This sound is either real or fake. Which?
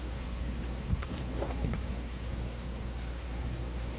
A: fake